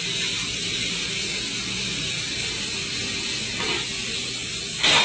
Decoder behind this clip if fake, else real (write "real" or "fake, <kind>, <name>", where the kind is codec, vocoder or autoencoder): real